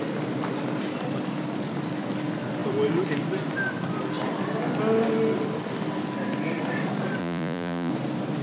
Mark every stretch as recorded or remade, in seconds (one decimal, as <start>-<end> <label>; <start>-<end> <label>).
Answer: 0.0-7.2 recorded; 7.2-7.9 remade; 7.9-8.4 recorded

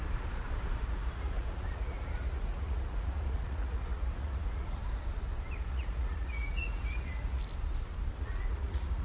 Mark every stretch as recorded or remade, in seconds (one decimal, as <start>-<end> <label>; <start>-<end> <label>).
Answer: 0.0-0.8 recorded; 0.8-4.8 remade; 4.8-5.7 recorded; 5.7-7.4 remade; 7.4-8.2 recorded; 8.2-9.0 remade

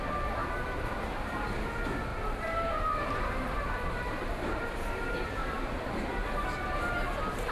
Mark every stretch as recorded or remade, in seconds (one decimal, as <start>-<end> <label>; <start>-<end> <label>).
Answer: 0.0-0.4 recorded; 0.4-1.7 remade; 1.7-2.1 recorded; 2.1-5.9 remade; 5.9-7.5 recorded

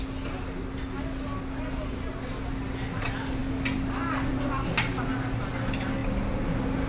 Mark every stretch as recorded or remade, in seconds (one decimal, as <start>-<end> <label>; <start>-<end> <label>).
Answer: 0.0-6.9 recorded

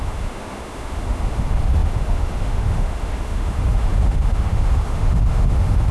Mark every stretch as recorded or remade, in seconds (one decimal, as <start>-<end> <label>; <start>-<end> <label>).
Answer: 0.0-5.9 remade

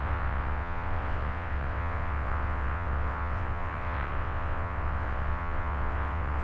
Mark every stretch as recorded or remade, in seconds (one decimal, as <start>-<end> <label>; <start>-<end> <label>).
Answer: 0.0-6.4 remade

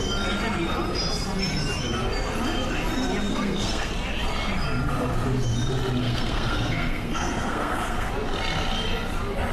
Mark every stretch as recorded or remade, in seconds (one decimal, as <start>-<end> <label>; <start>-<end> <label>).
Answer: 0.0-3.3 recorded; 3.3-3.9 remade; 3.9-6.0 recorded; 6.0-8.1 remade; 8.1-9.5 recorded